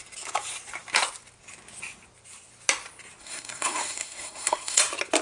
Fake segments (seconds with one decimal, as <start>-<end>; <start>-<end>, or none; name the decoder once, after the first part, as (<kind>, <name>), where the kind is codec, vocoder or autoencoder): 3.2-4.8 (codec, SNAC)